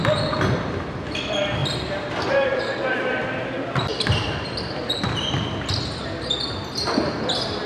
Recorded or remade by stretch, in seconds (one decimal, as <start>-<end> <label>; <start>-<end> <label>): 0.0-1.6 recorded; 1.6-2.6 remade; 2.6-3.9 recorded; 3.9-4.9 remade; 4.9-7.7 recorded